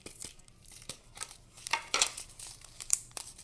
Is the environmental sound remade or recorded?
remade